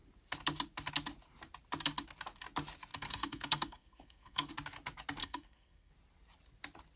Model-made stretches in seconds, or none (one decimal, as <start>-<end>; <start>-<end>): 2.9-4.5; 5.2-5.9